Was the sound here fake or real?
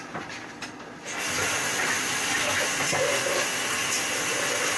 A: real